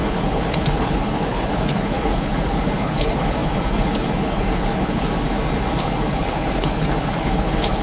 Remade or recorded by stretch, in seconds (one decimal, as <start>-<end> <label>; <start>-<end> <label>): 0.0-5.1 remade; 5.1-5.8 recorded; 5.8-7.8 remade